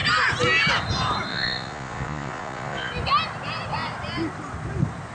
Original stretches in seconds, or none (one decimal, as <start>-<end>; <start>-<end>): 0.0-1.3; 2.9-5.1